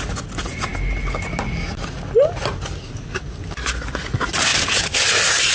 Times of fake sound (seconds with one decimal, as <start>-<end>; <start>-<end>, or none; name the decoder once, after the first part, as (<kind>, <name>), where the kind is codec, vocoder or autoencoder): none